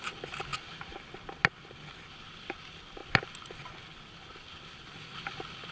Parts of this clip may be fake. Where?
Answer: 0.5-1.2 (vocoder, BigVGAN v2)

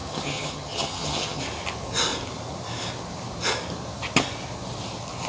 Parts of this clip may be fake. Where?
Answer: 0.0-1.4 (vocoder, HiFi-GAN)

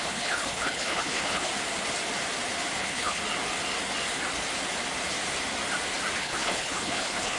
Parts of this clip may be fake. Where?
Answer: 0.0-1.5 (codec, HILCodec); 2.8-3.2; 6.2-7.4

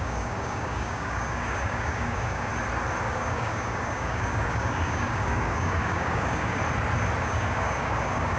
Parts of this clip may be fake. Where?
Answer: 0.0-2.5 (codec, DAC); 3.0-6.6; 7.2-8.4

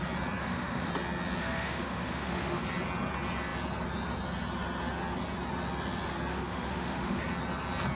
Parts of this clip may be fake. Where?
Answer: 0.4-0.9 (autoencoder, DAC-VAE); 1.4-2.6; 6.3-7.2